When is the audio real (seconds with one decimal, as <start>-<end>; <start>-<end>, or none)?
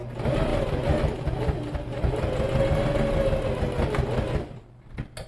0.0-5.3